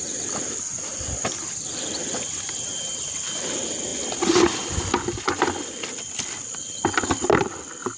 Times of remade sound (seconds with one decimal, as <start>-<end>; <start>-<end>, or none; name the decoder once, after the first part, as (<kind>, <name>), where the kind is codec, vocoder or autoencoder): 0.0-3.9 (vocoder, BigVGAN v2); 4.7-8.0